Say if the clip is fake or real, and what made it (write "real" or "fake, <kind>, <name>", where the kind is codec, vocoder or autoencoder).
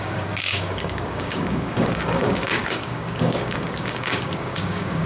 fake, codec, DAC